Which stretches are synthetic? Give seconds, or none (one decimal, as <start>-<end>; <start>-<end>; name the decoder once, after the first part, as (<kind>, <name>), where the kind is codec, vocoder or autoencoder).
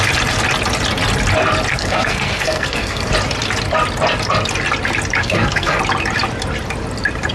1.7-3.1 (codec, SNAC); 5.2-5.8